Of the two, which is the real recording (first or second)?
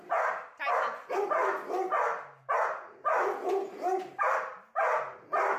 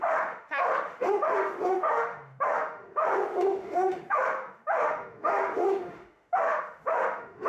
first